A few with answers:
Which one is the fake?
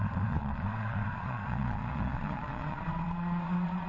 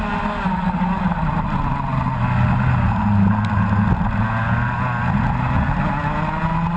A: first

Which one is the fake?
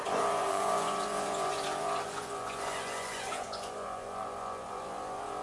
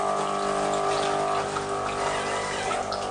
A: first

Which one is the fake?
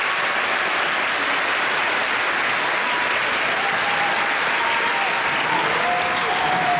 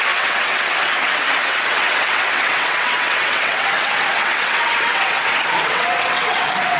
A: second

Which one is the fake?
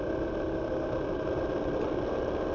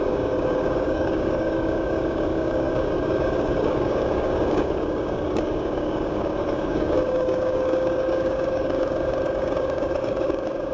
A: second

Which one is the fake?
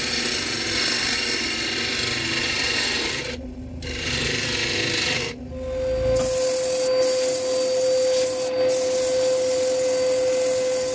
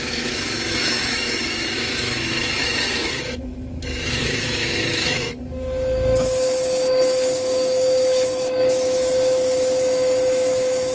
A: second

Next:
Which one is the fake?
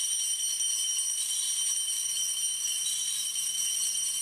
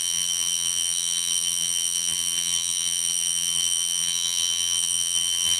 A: second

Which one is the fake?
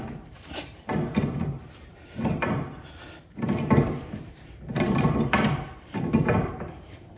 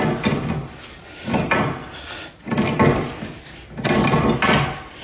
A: first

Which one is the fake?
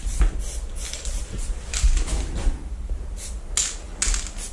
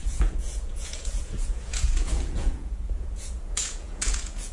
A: second